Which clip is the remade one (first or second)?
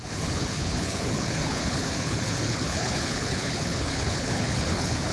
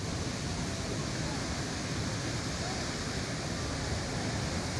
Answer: first